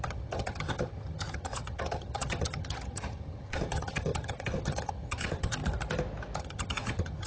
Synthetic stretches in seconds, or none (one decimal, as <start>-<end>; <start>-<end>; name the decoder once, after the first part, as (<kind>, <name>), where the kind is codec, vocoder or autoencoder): 0.0-5.6 (vocoder, HiFi-GAN); 6.4-7.3